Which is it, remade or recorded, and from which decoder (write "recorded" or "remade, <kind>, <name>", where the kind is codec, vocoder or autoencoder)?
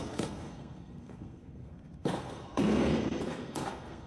remade, codec, SNAC